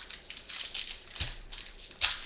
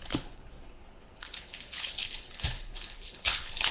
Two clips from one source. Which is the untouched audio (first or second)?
first